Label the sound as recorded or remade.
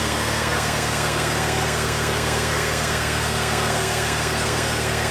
remade